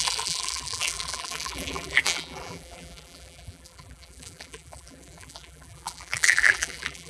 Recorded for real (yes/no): no